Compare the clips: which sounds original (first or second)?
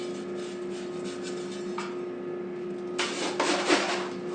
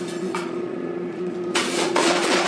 first